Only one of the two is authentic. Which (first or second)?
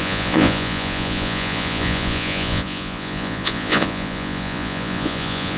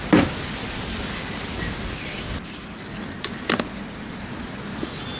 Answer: second